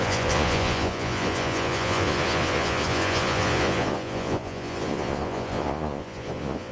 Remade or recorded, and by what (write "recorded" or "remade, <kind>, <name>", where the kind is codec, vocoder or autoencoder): remade, vocoder, Vocos